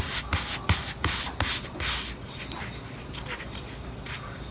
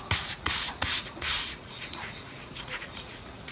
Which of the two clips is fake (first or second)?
second